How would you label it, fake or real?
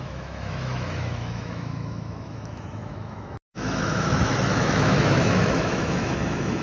fake